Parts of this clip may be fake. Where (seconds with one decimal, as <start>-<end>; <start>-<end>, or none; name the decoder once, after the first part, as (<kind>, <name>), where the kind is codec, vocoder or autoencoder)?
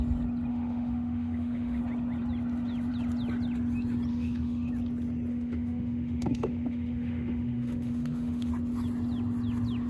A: 0.5-1.8 (autoencoder, DAC-VAE); 4.1-4.7; 5.3-8.5